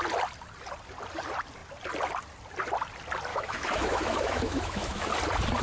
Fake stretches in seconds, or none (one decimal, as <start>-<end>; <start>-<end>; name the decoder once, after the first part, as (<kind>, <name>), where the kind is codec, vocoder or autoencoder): 3.3-5.1 (autoencoder, DAC-VAE)